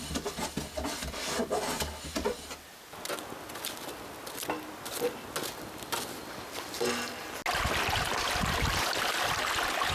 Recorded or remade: recorded